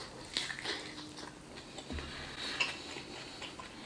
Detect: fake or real real